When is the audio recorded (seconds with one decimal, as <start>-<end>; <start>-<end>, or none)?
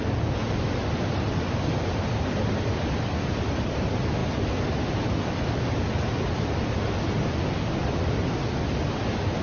0.0-9.4